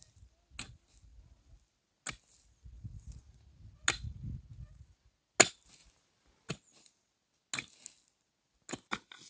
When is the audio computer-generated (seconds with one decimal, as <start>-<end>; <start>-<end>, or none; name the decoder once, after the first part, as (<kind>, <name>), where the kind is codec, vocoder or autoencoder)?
none